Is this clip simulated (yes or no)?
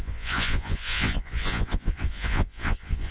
yes